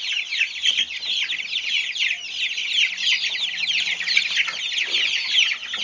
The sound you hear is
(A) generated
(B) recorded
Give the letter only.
B